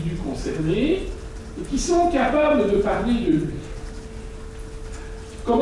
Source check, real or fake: real